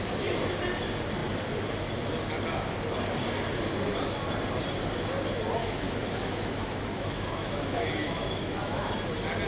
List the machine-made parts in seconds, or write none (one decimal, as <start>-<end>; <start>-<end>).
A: 5.6-8.9